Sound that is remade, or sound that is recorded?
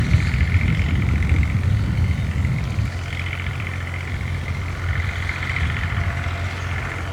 recorded